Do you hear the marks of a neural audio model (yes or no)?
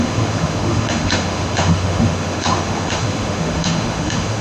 yes